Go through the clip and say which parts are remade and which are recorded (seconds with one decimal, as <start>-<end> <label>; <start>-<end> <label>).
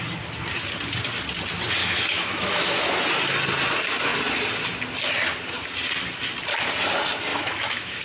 0.0-1.8 recorded; 1.8-3.0 remade; 3.0-7.3 recorded; 7.3-8.0 remade